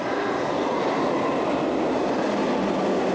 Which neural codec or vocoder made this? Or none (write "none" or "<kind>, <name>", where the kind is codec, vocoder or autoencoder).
none